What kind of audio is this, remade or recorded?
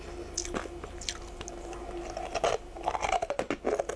recorded